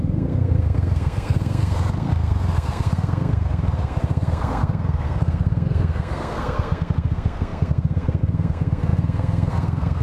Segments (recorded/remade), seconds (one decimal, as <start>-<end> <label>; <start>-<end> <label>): 0.0-10.0 remade